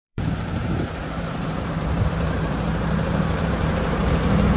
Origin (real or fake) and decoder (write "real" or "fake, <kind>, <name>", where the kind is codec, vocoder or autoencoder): fake, vocoder, BigVGAN v2